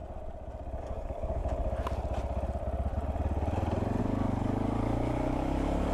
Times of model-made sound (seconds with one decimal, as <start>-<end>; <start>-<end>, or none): 0.8-1.4; 4.0-5.9